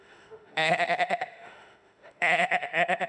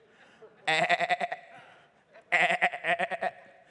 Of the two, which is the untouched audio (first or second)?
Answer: second